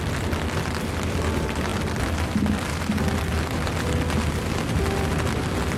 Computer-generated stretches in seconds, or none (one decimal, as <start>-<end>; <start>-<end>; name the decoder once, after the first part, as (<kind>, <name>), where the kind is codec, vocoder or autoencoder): none